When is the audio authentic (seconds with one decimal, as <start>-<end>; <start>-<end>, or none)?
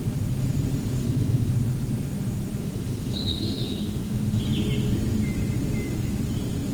0.0-1.0; 1.5-2.6; 4.4-6.7